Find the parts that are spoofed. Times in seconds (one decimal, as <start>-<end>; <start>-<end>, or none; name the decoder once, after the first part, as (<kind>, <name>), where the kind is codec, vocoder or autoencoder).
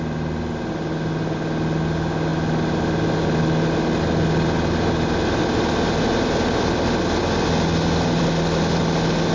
none